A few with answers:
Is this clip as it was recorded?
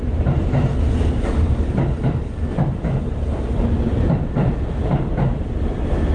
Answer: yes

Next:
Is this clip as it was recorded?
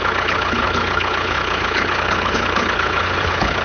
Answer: no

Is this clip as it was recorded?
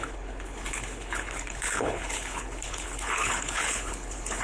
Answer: no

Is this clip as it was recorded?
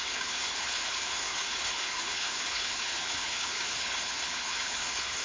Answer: no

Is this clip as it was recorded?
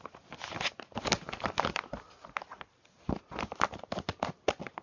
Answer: yes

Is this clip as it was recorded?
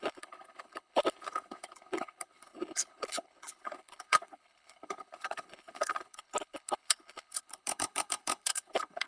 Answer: no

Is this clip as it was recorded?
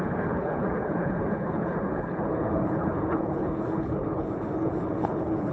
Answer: no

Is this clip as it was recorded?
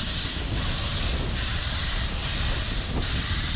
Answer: yes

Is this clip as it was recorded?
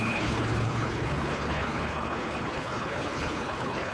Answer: no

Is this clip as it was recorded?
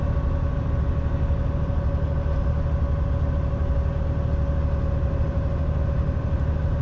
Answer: yes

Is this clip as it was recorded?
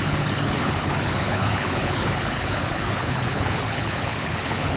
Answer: no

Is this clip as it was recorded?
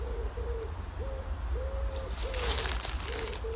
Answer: yes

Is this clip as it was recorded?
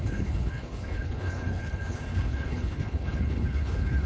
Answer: no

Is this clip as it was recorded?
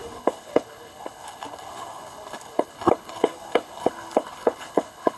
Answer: no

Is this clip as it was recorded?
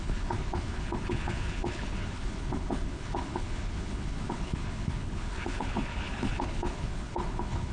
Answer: no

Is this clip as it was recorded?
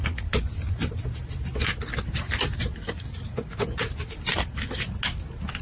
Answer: yes